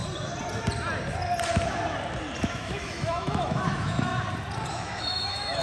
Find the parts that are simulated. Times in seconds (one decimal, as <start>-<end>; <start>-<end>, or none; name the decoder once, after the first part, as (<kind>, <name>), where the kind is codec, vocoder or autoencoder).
2.4-4.1 (autoencoder, DAC-VAE); 4.7-5.6